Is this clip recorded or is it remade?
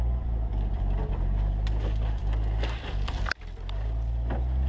recorded